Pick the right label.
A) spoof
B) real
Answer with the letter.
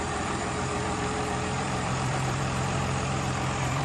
A